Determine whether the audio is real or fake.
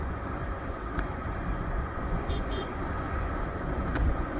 fake